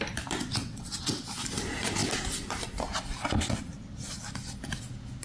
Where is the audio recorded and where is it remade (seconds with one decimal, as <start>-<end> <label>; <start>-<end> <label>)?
0.0-0.6 recorded; 0.6-1.2 remade; 1.2-5.2 recorded